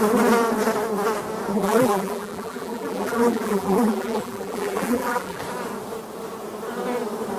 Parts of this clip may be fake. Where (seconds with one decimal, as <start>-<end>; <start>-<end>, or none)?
1.5-5.4